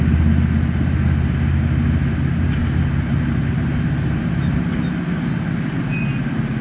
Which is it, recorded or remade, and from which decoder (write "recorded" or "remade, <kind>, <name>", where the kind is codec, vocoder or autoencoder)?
recorded